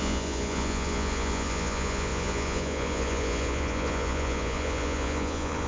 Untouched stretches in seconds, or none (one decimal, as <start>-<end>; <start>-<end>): none